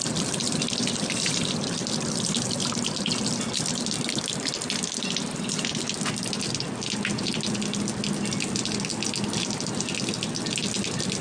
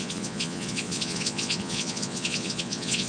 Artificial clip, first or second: second